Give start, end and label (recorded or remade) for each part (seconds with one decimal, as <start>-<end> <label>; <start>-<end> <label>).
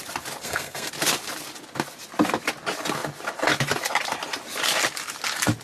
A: 0.0-0.4 recorded; 0.4-0.9 remade; 0.9-5.6 recorded